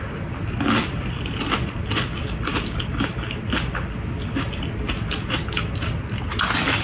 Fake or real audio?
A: real